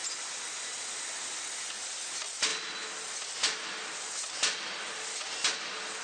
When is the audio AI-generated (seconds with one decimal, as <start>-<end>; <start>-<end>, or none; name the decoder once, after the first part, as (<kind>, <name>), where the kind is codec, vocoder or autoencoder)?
none